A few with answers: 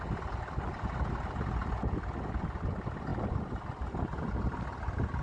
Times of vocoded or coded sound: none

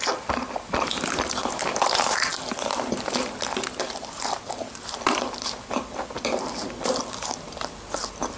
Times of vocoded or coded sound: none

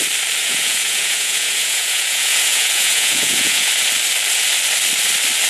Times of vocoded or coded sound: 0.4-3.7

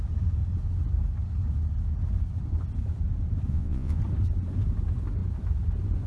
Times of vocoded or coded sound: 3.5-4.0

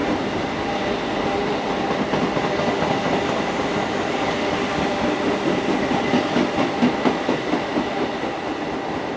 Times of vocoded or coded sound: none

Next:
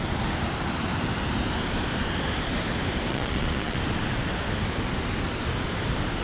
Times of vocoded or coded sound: 3.1-3.8